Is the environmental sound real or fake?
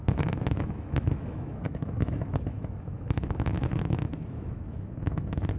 fake